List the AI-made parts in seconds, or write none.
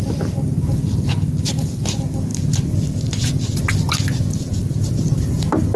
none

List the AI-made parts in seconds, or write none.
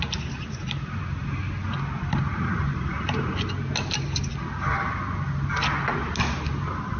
2.3-3.3 (vocoder, BigVGAN v2)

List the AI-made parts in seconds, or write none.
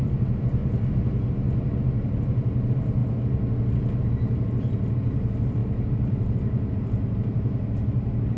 0.0-0.6 (vocoder, BigVGAN v2); 1.8-3.0; 4.0-8.4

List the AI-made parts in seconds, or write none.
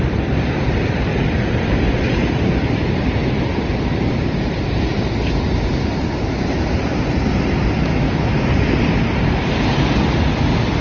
1.1-2.7 (vocoder, BigVGAN v2); 3.9-6.1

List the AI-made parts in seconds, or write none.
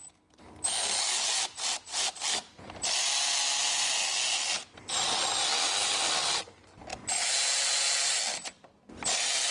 none